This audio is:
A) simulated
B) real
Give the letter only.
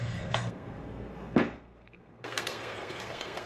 A